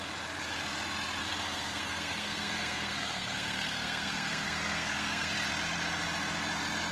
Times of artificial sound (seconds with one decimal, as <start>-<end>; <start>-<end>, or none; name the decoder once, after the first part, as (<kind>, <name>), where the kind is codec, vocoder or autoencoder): 1.2-5.3 (codec, SNAC)